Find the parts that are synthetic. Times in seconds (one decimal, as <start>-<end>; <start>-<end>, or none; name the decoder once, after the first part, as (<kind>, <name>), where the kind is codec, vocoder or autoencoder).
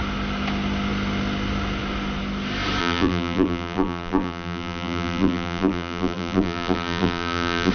2.8-7.7 (vocoder, BigVGAN v2)